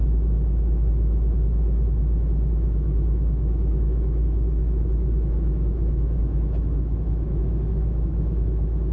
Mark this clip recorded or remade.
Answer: remade